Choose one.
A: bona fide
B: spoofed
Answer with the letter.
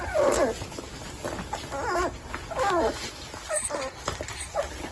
A